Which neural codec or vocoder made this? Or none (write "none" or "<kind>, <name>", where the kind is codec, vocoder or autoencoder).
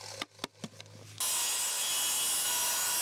none